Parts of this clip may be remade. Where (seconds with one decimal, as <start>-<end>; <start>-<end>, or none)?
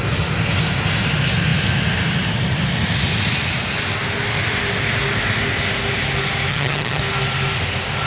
6.5-7.0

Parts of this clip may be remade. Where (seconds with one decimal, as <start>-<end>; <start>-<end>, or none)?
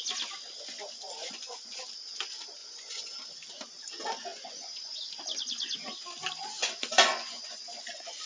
1.2-1.8; 2.6-3.2; 4.3-5.0; 6.4-7.6